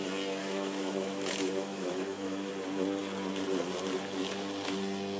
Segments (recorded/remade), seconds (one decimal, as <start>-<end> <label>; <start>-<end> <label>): 0.0-0.4 recorded; 0.4-2.5 remade; 2.5-5.2 recorded